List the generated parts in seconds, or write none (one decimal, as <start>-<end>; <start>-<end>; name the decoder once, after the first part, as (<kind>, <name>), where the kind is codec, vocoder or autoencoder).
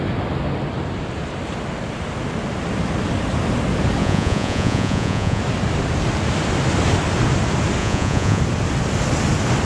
4.0-5.4 (vocoder, Vocos); 7.8-8.4